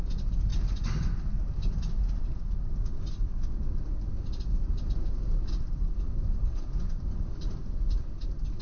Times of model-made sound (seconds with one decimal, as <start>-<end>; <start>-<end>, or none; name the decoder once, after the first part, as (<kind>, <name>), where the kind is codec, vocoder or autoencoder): none